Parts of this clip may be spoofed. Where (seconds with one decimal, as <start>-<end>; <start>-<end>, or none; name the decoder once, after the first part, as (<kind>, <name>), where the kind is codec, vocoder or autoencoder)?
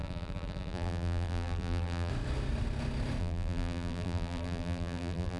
0.0-2.1 (vocoder, BigVGAN v2); 3.2-5.4